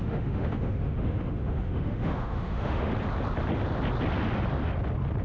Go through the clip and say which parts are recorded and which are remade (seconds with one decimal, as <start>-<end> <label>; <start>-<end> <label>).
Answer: 0.0-2.9 remade; 2.9-5.2 recorded